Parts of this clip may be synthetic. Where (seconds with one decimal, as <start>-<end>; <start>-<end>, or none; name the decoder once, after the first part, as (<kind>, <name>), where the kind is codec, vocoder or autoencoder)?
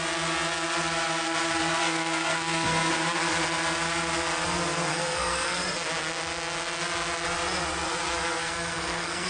1.6-2.9 (codec, SNAC); 4.9-5.6; 8.4-9.3